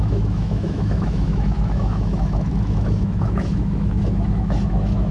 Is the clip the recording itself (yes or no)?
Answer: no